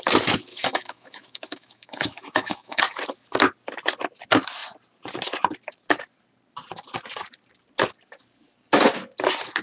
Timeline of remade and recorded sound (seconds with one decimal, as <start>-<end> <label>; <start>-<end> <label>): 0.0-0.5 recorded; 0.5-2.8 remade; 2.8-9.6 recorded